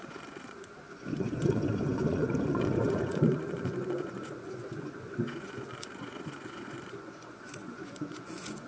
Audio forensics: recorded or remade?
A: remade